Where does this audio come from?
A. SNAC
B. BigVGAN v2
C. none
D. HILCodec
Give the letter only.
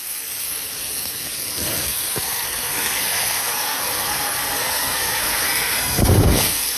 A